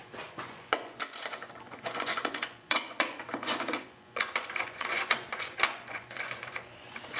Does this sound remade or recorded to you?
remade